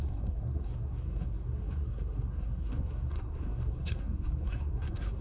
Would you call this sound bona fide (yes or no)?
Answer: no